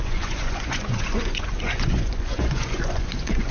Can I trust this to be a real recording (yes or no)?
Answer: no